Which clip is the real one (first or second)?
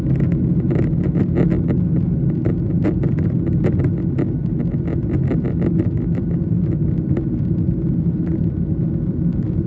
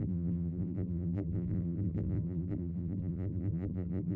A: first